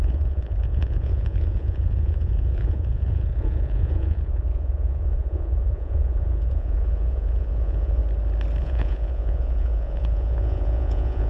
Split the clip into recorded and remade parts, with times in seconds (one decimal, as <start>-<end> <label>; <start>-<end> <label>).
0.0-8.0 remade; 8.0-8.6 recorded; 8.6-11.3 remade